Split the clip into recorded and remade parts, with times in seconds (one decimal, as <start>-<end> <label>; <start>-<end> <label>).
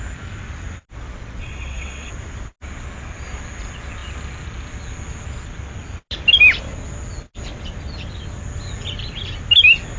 0.0-1.4 recorded; 1.4-2.1 remade; 2.1-10.0 recorded